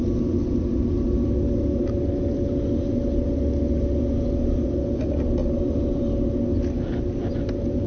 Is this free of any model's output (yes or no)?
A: yes